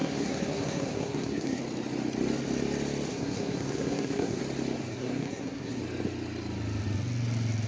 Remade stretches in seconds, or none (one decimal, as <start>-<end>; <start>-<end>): 0.0-1.6; 3.1-4.4; 4.9-5.8